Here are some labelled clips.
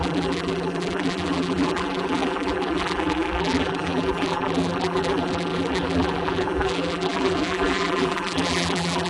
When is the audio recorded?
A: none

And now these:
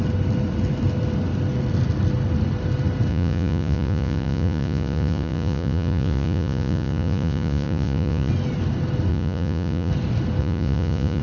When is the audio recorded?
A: 0.0-3.1; 8.3-9.1; 9.9-10.4

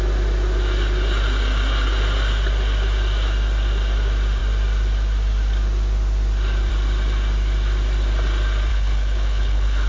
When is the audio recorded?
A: 0.0-8.7

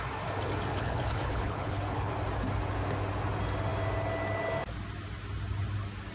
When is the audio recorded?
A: 0.0-0.7; 2.1-6.1

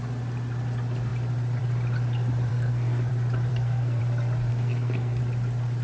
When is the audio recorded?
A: 0.0-2.5; 3.1-3.5; 4.0-4.5; 5.2-5.8

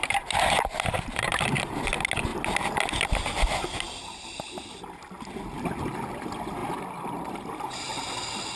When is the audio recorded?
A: 0.0-8.6

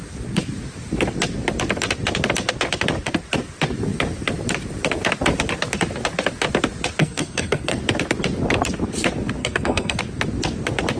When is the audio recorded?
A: 0.0-7.0; 7.8-9.4; 10.0-11.0